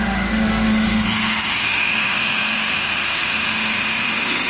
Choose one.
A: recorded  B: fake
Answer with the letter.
B